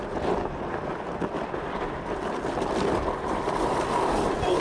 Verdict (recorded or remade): recorded